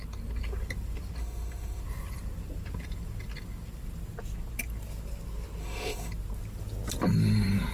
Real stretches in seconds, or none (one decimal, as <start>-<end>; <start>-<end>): 0.0-1.2; 1.8-5.6; 6.1-7.7